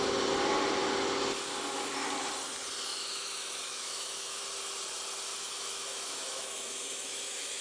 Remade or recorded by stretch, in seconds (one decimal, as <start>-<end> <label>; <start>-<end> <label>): 0.0-2.9 recorded; 2.9-4.4 remade; 4.4-5.3 recorded; 5.3-7.6 remade